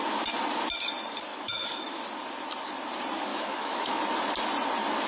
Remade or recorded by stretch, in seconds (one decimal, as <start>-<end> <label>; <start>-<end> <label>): 0.0-1.3 recorded; 1.3-2.0 remade; 2.0-3.3 recorded; 3.3-4.0 remade; 4.0-5.1 recorded

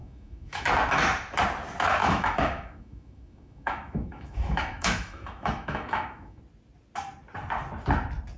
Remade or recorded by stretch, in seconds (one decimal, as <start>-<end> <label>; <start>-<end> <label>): 0.0-0.7 remade; 0.7-2.0 recorded; 2.0-6.4 remade; 6.4-8.4 recorded

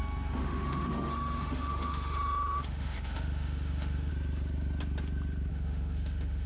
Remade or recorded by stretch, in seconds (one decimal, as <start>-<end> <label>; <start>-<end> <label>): 0.0-0.4 recorded; 0.4-4.1 remade; 4.1-5.5 recorded; 5.5-6.5 remade

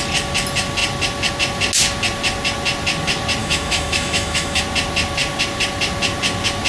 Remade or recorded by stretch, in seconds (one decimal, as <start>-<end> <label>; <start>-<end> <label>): 0.0-3.4 recorded; 3.4-4.6 remade; 4.6-6.7 recorded